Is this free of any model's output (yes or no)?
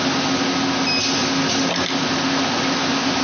yes